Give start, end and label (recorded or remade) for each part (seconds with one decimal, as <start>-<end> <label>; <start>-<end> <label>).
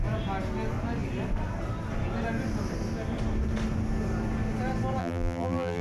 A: 0.0-5.0 recorded; 5.0-5.8 remade